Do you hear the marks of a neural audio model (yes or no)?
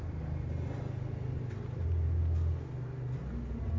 no